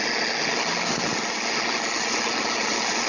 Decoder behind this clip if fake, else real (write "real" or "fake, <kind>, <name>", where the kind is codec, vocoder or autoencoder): real